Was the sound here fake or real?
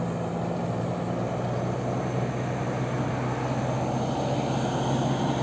real